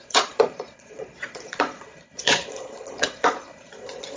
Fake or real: fake